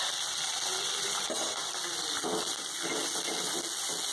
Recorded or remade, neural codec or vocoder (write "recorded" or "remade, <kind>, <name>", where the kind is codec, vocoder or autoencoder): recorded